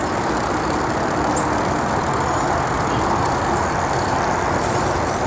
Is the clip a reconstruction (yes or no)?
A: no